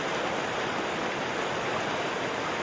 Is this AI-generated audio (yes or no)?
no